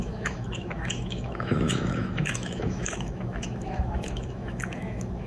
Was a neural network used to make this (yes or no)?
yes